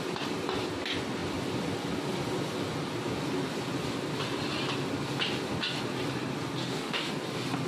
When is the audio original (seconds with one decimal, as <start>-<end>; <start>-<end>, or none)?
0.0-6.6; 7.1-7.7